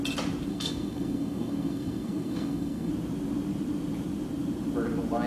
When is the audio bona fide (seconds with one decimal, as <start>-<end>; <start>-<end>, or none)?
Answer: 0.0-0.5; 2.9-5.3